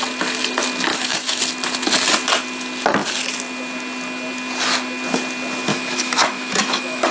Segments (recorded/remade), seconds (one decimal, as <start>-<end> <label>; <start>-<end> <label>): 0.0-0.9 recorded; 0.9-1.4 remade; 1.4-5.7 recorded; 5.7-7.1 remade